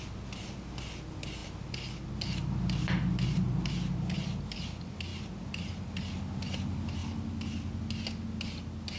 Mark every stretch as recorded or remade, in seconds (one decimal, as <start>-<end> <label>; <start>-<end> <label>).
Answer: 0.0-9.0 recorded